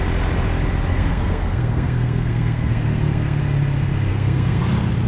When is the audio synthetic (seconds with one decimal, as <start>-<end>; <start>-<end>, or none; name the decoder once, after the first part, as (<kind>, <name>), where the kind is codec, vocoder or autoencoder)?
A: 0.9-3.4 (codec, SNAC); 4.1-4.6